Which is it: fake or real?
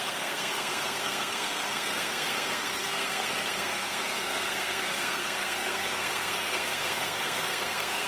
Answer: fake